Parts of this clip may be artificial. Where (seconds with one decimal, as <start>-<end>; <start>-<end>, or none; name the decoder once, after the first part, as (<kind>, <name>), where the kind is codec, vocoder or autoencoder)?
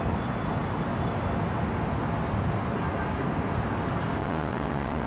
4.2-5.1 (vocoder, WaveNeXt)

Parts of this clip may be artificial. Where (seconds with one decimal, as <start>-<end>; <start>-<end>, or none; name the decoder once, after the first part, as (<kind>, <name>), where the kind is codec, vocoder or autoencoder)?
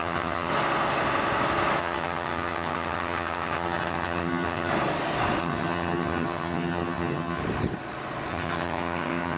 0.0-0.5 (vocoder, HiFi-GAN); 1.8-4.7; 5.4-7.4; 8.3-9.4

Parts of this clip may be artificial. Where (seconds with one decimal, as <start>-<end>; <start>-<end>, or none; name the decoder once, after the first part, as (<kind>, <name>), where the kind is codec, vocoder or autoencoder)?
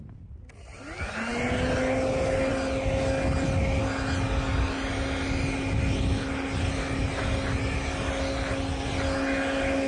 none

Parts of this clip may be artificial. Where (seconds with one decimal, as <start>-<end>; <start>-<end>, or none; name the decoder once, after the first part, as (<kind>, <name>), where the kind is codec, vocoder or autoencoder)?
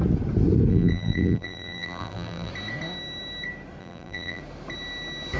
0.7-2.5 (vocoder, BigVGAN v2); 3.8-4.4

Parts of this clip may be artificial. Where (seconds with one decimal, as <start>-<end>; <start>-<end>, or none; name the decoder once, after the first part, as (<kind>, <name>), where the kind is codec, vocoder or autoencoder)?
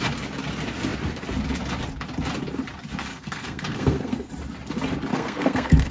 3.1-4.3 (codec, SNAC); 5.1-5.9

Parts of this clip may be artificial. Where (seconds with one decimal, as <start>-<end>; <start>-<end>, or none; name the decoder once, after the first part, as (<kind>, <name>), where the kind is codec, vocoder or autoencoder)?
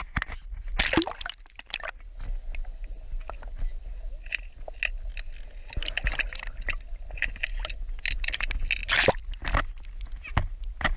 none